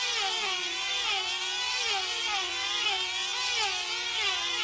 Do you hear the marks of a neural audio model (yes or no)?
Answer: no